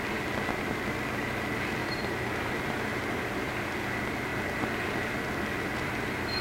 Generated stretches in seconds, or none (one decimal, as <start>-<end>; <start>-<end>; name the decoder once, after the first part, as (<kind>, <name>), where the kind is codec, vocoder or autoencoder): 1.8-2.5 (vocoder, BigVGAN v2); 2.9-3.8